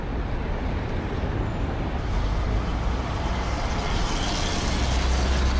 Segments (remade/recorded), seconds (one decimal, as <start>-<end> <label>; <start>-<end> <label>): 0.0-2.7 recorded; 2.7-3.6 remade; 3.6-5.6 recorded